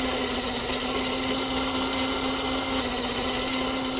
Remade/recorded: recorded